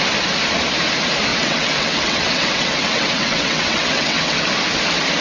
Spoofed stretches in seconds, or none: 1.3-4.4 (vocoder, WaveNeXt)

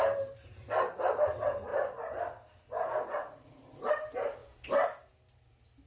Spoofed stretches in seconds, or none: none

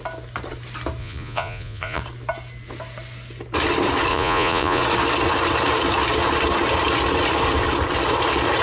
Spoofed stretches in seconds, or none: 1.0-2.0 (vocoder, Vocos); 4.1-4.8

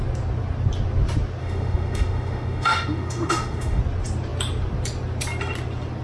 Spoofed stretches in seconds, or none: 1.4-3.8 (autoencoder, DAC-VAE)

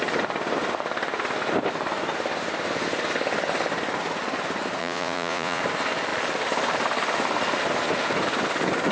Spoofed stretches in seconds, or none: 4.8-5.6 (vocoder, Vocos)

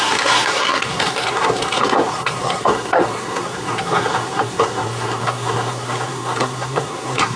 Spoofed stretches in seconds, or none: 0.0-7.4 (codec, SNAC)

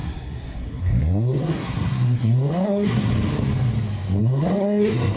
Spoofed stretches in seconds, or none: 0.0-3.1 (codec, SNAC); 4.2-5.2